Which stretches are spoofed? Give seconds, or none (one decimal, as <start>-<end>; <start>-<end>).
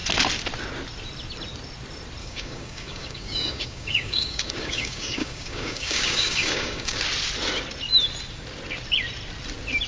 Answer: 2.2-7.0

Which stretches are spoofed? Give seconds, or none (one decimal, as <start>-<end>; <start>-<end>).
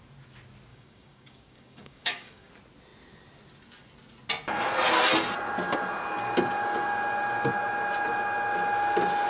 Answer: 0.7-2.5